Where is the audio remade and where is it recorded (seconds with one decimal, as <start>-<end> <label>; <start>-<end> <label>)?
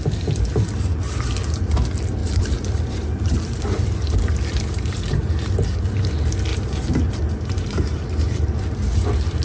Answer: 0.0-2.2 recorded; 2.2-6.1 remade; 6.1-6.5 recorded; 6.5-8.6 remade; 8.6-9.4 recorded